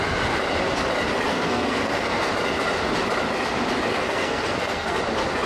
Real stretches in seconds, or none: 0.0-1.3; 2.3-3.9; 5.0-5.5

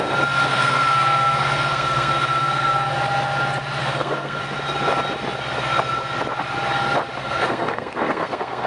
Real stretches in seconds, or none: 0.0-0.5; 2.9-3.8; 4.4-7.2

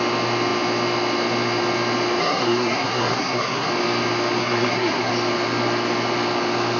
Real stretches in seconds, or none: 0.0-2.2; 3.7-4.4; 5.1-6.8

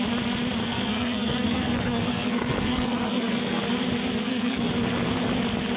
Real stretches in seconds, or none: 0.0-0.6; 3.6-4.2; 4.7-5.8

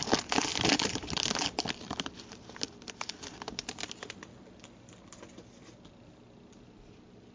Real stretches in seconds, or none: 0.0-7.3

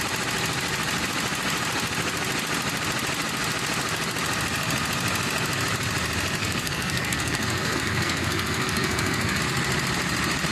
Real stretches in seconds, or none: 0.0-6.4; 9.4-10.5

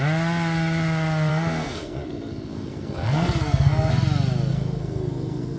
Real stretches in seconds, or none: 0.0-1.3; 3.9-4.5

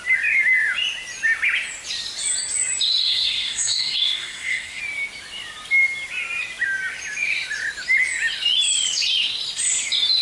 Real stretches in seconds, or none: 0.0-3.0; 4.8-10.2